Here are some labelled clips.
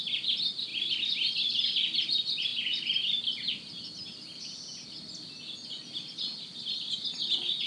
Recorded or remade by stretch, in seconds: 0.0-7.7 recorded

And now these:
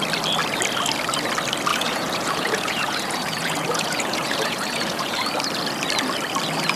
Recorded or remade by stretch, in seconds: 0.0-1.7 recorded; 1.7-5.3 remade; 5.3-6.8 recorded

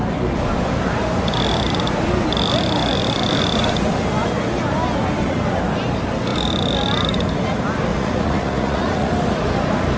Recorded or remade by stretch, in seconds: 0.0-7.9 recorded; 7.9-9.1 remade; 9.1-10.0 recorded

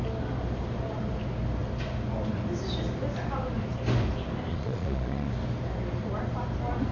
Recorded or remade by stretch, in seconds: 0.0-4.5 recorded; 4.5-5.3 remade; 5.3-6.9 recorded

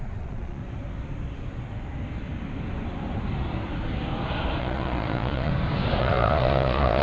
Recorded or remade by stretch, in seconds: 0.0-0.6 remade; 0.6-4.6 recorded; 4.6-5.5 remade; 5.5-6.0 recorded; 6.0-7.0 remade

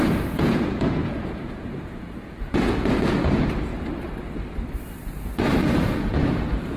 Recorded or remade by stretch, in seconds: 0.0-3.7 remade; 3.7-5.0 recorded; 5.0-6.8 remade

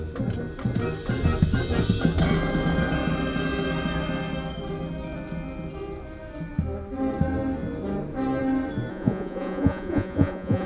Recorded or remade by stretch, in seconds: 0.0-8.9 recorded; 8.9-10.7 remade

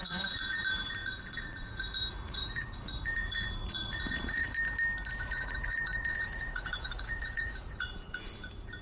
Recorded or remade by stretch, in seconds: 0.0-4.4 remade; 4.4-5.2 recorded; 5.2-8.8 remade